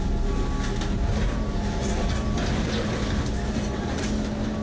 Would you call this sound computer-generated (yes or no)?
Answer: no